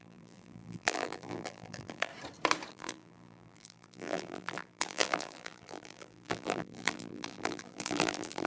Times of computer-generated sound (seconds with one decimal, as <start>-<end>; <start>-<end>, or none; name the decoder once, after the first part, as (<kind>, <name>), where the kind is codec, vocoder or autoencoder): 0.0-2.1 (vocoder, BigVGAN v2); 2.7-8.5

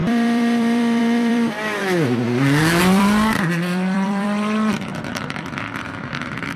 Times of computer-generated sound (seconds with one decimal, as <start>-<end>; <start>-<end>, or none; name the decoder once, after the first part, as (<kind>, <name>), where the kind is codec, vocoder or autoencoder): 0.0-1.8 (vocoder, BigVGAN v2); 2.8-4.9; 5.8-6.6